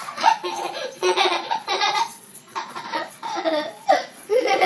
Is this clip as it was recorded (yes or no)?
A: no